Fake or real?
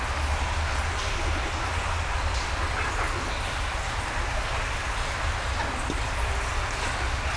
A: real